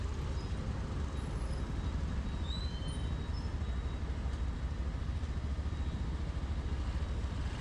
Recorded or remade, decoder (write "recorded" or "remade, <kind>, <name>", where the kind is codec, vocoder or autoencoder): recorded